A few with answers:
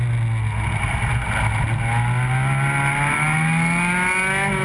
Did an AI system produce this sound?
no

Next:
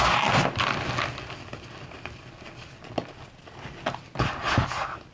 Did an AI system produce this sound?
no